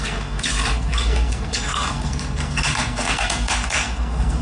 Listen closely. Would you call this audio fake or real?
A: fake